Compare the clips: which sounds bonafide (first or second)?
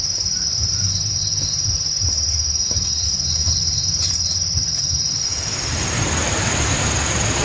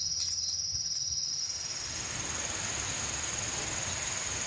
second